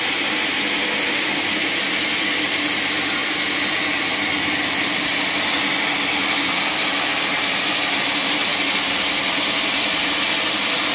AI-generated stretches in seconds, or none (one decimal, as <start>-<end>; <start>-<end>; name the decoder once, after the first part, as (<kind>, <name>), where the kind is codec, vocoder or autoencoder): none